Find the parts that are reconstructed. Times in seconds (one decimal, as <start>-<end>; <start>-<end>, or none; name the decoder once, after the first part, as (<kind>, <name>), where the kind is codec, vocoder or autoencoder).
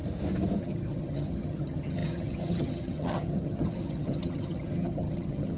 0.6-5.6 (vocoder, HiFi-GAN)